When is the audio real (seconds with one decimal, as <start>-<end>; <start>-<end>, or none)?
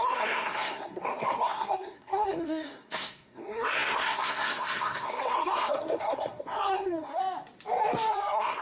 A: 7.2-8.1